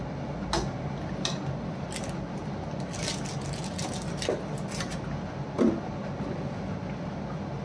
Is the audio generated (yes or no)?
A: no